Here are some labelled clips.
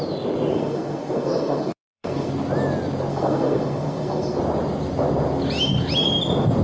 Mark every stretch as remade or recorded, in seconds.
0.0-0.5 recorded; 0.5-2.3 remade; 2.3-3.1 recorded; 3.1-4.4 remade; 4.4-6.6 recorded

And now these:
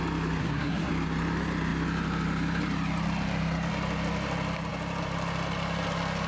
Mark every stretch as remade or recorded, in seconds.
0.0-0.4 recorded; 0.4-0.9 remade; 0.9-6.3 recorded

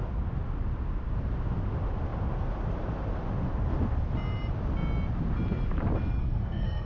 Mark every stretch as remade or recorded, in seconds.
0.0-6.2 recorded; 6.2-6.9 remade

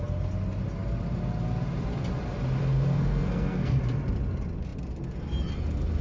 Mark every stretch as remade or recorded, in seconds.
0.0-2.6 recorded; 2.6-3.8 remade; 3.8-6.0 recorded